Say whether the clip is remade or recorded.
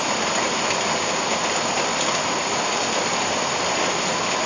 recorded